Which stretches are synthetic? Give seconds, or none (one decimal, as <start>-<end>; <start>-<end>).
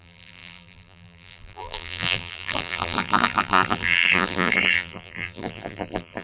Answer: 0.0-6.2